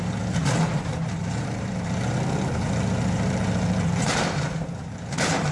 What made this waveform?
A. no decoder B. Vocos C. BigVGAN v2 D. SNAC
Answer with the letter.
C